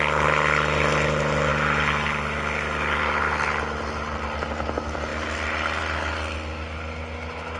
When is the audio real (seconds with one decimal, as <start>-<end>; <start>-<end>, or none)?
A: 0.0-7.6